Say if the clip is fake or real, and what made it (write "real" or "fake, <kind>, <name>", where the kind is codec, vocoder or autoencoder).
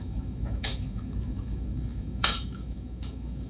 fake, autoencoder, DAC-VAE